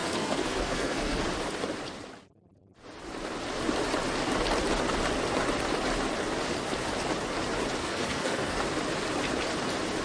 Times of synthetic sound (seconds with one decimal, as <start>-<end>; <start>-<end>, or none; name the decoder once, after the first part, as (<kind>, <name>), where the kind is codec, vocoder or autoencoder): 0.0-1.2 (codec, SNAC); 7.8-8.6

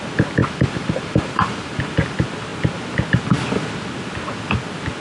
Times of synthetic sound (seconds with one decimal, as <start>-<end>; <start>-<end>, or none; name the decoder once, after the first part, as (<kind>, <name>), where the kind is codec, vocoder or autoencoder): 0.4-1.8 (vocoder, BigVGAN v2)